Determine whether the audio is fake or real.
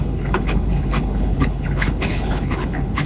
fake